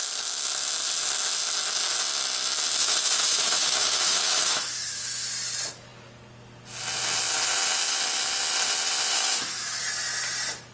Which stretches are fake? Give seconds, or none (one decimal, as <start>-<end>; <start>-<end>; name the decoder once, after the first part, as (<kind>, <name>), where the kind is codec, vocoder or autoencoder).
2.8-5.3 (autoencoder, DAC-VAE); 9.1-9.8